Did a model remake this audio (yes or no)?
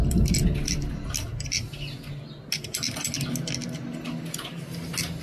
no